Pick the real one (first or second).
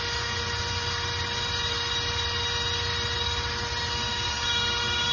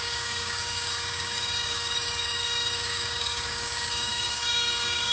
first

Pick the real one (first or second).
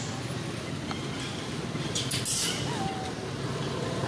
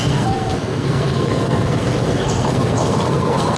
first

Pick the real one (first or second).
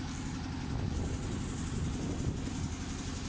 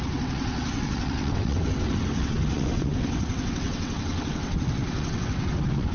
first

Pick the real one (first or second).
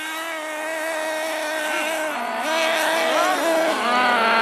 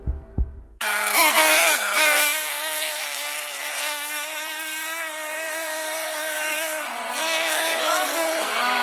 first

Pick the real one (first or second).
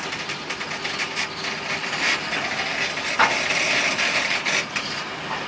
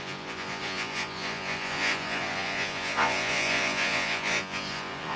first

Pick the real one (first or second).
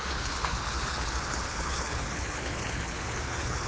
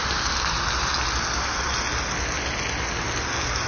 second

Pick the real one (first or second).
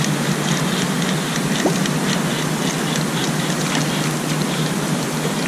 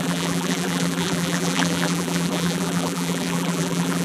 first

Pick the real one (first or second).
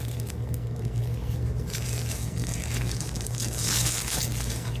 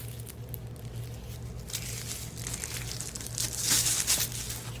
second